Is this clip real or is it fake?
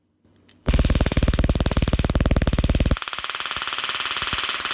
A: real